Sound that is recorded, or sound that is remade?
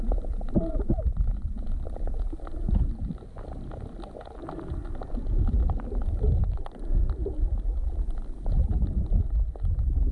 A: recorded